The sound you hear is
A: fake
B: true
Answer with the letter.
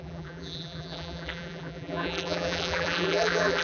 A